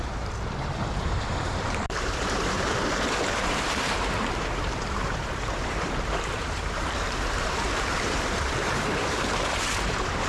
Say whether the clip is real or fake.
fake